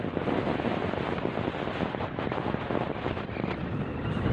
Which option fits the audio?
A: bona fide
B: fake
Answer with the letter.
A